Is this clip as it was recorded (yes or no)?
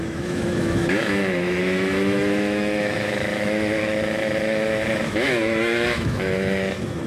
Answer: no